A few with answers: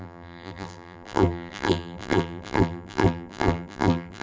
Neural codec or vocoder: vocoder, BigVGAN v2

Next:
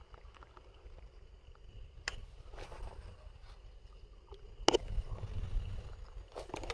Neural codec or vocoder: none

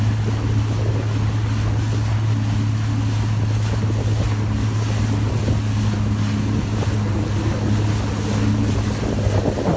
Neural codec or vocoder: none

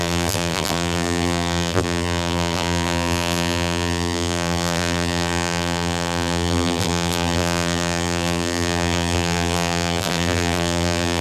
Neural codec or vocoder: vocoder, BigVGAN v2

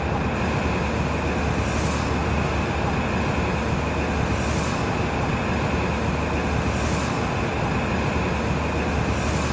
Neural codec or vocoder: none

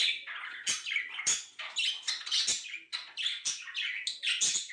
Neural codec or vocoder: none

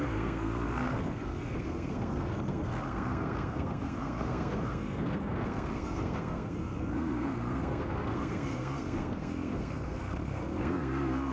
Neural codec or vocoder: codec, SNAC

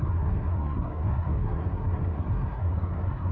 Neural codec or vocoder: codec, SNAC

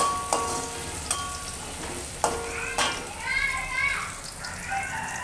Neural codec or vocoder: none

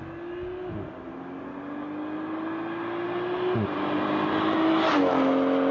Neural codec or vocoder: none